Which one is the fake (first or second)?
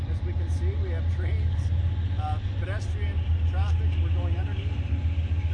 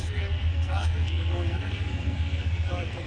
second